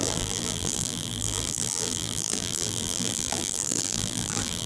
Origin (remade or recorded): remade